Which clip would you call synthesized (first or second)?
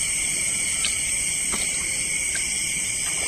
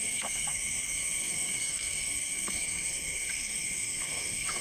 second